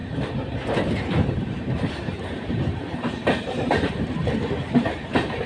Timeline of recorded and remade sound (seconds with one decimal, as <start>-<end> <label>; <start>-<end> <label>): 0.0-5.5 remade